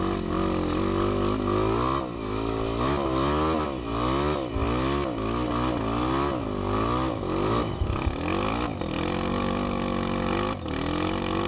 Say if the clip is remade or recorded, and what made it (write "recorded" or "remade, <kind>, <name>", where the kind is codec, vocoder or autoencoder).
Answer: recorded